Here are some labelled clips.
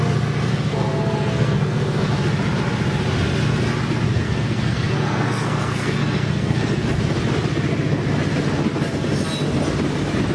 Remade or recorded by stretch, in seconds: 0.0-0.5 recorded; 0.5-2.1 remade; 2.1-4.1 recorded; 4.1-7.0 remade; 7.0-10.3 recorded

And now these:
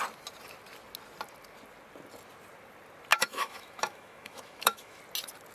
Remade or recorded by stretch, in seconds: 0.0-3.1 recorded; 3.1-5.0 remade; 5.0-5.5 recorded

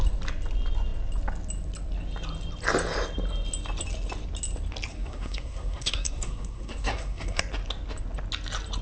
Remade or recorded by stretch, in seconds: 0.0-4.9 recorded; 4.9-7.4 remade; 7.4-8.8 recorded

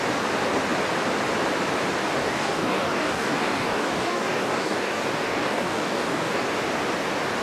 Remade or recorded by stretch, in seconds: 0.0-2.2 recorded; 2.2-6.4 remade; 6.4-7.4 recorded